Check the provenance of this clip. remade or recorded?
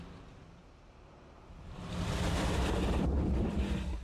recorded